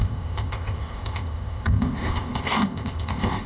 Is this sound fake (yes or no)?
yes